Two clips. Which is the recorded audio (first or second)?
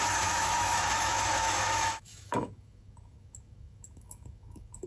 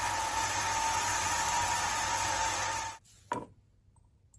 second